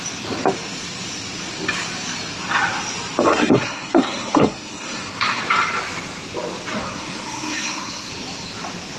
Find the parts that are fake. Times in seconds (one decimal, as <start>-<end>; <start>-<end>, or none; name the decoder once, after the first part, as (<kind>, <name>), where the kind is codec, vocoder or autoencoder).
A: 3.3-5.4 (codec, SNAC); 6.8-8.1